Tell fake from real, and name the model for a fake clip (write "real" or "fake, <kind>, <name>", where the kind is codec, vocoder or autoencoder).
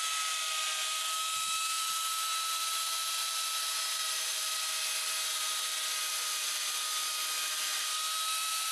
real